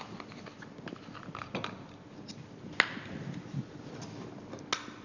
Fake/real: real